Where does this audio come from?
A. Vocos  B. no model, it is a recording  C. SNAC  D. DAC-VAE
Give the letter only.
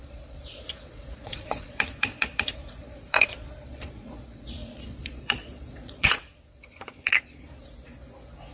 A